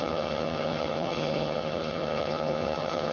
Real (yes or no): no